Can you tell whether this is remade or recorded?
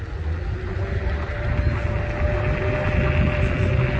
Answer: recorded